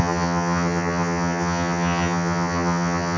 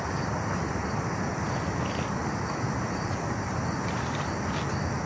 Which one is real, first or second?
second